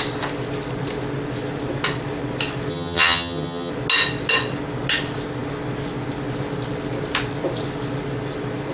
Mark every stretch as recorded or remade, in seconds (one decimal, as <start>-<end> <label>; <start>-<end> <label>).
0.0-2.7 recorded; 2.7-3.7 remade; 3.7-8.7 recorded